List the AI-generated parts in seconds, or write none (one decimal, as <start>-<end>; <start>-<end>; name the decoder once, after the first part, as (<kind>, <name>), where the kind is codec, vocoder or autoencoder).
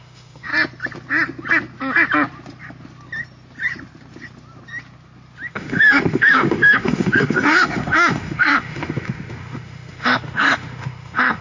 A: 0.0-0.5 (autoencoder, DAC-VAE); 5.5-11.4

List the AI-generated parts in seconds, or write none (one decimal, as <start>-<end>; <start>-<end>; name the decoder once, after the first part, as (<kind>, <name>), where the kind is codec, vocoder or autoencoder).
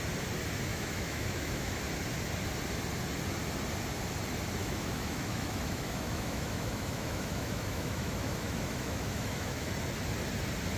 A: 0.7-1.8 (autoencoder, DAC-VAE); 4.6-9.7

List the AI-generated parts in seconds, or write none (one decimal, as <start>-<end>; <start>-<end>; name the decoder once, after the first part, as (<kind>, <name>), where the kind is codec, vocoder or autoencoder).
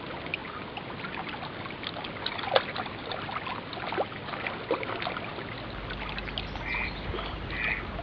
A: none